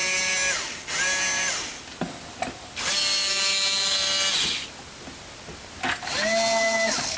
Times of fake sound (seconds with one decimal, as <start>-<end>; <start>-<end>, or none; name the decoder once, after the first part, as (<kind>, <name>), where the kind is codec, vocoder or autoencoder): none